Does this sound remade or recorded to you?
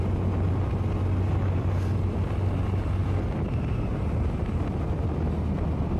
recorded